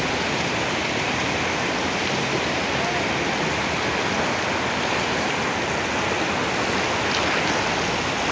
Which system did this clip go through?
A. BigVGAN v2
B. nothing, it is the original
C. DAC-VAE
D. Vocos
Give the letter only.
B